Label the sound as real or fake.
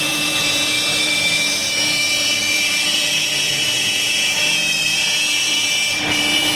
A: fake